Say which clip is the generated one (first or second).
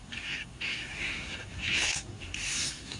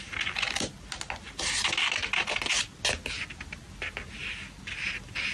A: first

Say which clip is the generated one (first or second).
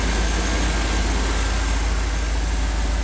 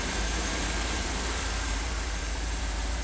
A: second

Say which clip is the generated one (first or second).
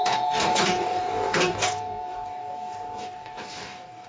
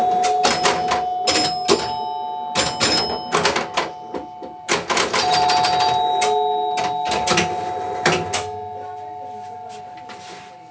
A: first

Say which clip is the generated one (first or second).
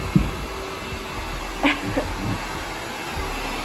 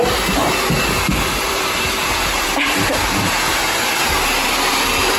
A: second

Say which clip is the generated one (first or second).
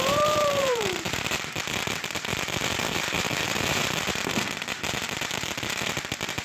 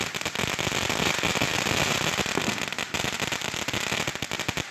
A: first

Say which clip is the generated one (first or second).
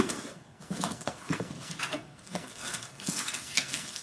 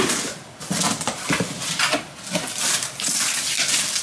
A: first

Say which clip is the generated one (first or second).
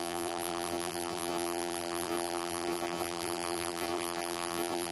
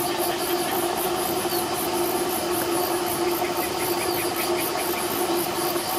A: first